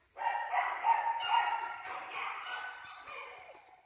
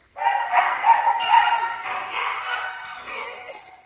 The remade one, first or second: second